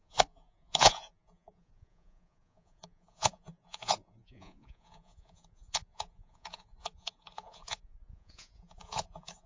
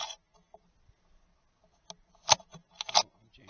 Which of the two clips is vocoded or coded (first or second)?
first